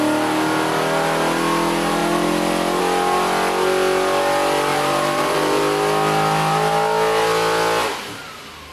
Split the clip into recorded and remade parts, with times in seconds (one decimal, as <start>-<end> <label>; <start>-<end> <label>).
0.0-4.7 recorded; 4.7-5.6 remade; 5.6-8.7 recorded